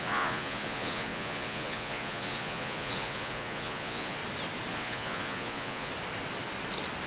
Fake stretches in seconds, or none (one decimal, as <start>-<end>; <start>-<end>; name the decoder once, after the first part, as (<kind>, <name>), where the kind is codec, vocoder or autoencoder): 0.0-4.2 (vocoder, Vocos); 4.7-5.9

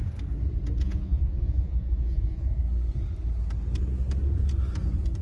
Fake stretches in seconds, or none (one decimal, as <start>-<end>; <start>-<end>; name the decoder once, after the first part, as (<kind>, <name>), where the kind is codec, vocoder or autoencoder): 0.8-2.6 (vocoder, Vocos)